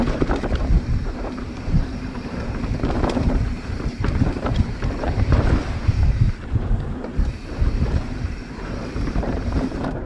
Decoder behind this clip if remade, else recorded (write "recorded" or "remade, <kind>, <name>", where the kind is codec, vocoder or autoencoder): remade, vocoder, BigVGAN v2